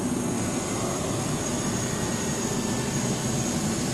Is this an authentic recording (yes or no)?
yes